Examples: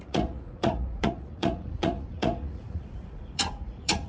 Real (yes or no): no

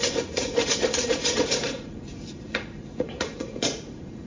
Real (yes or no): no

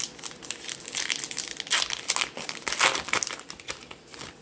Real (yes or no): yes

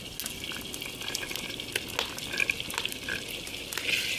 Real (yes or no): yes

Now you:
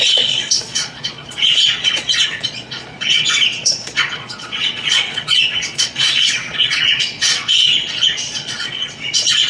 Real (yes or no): no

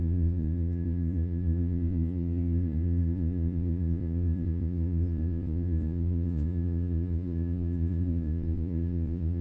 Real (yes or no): no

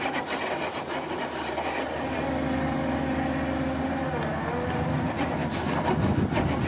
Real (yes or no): yes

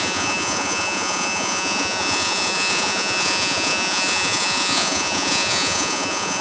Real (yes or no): no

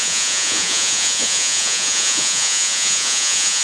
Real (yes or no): no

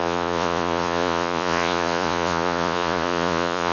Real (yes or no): no